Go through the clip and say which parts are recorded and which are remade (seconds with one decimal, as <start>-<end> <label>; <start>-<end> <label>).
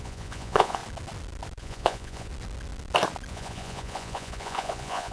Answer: 0.0-0.8 remade; 0.8-1.6 recorded; 1.6-2.3 remade; 2.3-3.3 recorded; 3.3-5.1 remade